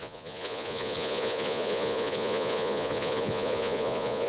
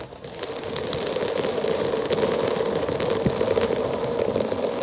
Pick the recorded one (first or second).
second